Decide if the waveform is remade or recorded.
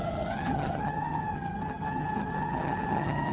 remade